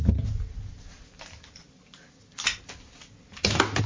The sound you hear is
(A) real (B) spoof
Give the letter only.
A